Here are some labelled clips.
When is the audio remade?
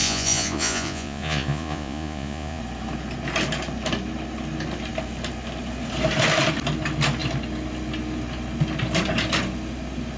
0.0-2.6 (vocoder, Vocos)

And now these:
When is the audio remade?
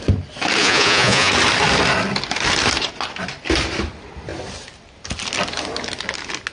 0.6-1.3 (vocoder, Vocos)